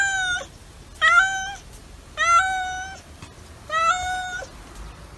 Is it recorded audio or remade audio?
recorded